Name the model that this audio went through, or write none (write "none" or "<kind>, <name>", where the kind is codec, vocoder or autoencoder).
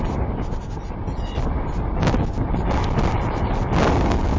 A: none